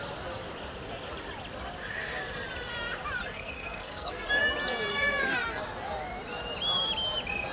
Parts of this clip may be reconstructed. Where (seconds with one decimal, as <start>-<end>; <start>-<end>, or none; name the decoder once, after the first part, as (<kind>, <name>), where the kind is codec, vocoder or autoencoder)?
3.2-4.4 (codec, SNAC); 4.9-5.6